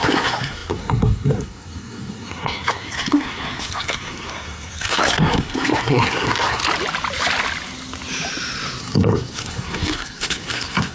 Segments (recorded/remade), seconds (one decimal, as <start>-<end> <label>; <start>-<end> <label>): 0.0-6.6 remade; 6.6-8.8 recorded; 8.8-10.9 remade